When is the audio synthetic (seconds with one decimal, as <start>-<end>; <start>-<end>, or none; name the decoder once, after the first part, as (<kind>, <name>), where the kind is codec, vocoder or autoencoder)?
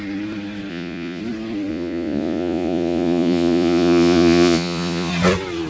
0.7-1.2 (vocoder, Vocos); 1.7-5.1